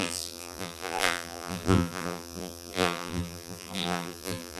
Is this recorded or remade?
remade